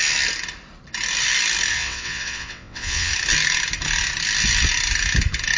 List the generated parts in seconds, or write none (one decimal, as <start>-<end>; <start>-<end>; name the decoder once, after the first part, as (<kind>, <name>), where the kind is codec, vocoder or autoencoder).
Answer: 1.7-3.1 (vocoder, WaveNeXt)